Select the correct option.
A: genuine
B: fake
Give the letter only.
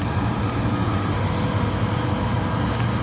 A